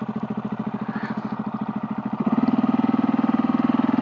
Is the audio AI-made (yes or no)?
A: no